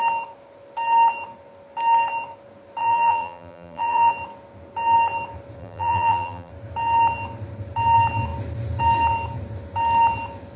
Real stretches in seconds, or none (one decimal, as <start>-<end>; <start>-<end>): 0.0-2.8; 4.1-5.6; 6.5-10.6